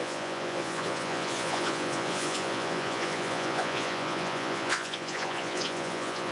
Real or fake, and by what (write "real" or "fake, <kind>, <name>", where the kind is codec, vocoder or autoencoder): fake, vocoder, Vocos